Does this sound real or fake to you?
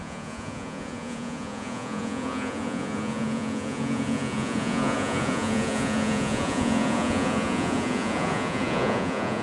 fake